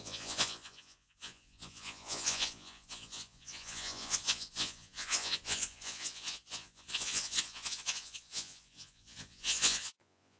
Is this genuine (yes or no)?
no